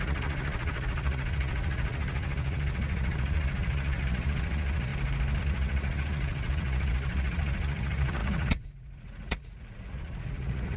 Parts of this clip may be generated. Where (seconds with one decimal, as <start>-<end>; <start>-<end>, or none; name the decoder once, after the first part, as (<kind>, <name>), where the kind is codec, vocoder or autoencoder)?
0.0-4.9 (vocoder, Vocos); 5.4-10.8